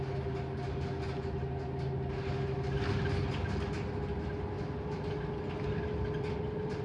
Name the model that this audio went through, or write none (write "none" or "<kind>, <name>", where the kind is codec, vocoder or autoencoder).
none